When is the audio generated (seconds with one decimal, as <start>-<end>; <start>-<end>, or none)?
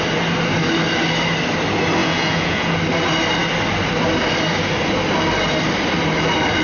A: 2.0-2.8